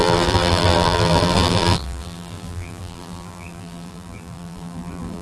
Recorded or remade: remade